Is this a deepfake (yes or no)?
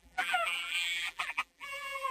yes